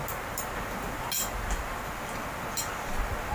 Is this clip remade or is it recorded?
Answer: recorded